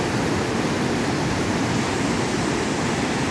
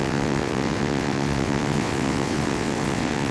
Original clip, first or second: first